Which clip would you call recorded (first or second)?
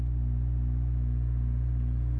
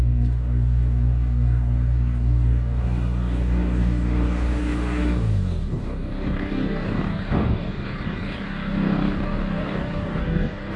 first